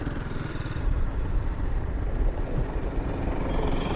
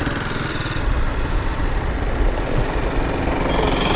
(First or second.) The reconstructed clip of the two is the first